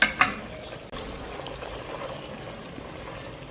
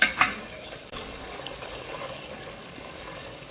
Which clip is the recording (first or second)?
first